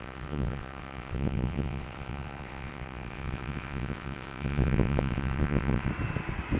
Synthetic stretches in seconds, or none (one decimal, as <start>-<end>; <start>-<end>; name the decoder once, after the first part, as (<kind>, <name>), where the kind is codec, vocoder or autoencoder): 0.0-5.9 (vocoder, WaveNeXt)